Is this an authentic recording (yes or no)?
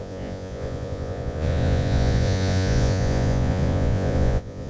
no